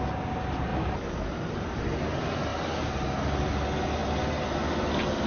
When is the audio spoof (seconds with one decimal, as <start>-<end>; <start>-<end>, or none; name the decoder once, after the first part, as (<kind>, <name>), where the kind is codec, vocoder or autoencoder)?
0.7-1.8 (vocoder, BigVGAN v2); 4.0-5.3